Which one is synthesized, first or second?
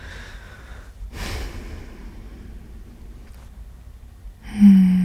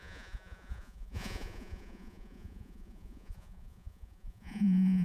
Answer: second